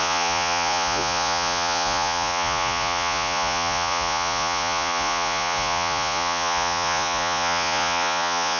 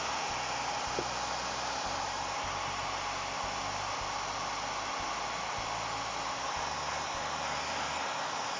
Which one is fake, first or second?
first